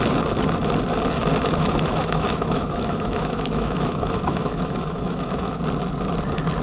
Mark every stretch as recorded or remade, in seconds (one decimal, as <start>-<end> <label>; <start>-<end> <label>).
0.0-1.6 recorded; 1.6-5.6 remade; 5.6-6.6 recorded